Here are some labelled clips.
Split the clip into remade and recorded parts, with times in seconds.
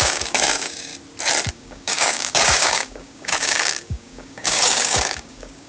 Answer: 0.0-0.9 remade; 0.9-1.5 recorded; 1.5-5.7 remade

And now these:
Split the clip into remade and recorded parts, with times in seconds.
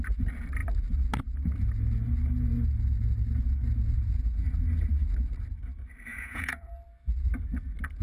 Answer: 0.0-6.1 recorded; 6.1-6.7 remade; 6.7-8.0 recorded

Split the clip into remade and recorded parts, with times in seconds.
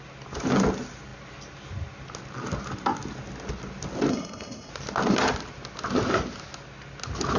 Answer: 0.0-4.1 recorded; 4.1-4.7 remade; 4.7-7.4 recorded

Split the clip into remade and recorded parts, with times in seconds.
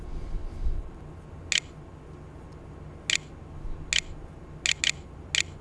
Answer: 0.0-5.6 recorded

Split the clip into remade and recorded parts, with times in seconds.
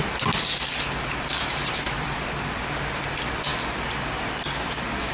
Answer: 0.0-3.5 remade; 3.5-4.4 recorded; 4.4-5.1 remade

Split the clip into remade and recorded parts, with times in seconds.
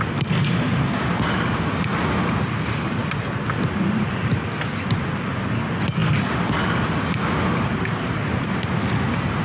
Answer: 0.0-3.0 recorded; 3.0-4.8 remade; 4.8-9.4 recorded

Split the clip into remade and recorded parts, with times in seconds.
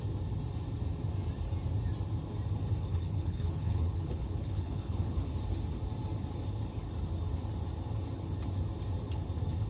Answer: 0.0-2.9 recorded; 2.9-5.3 remade; 5.3-9.7 recorded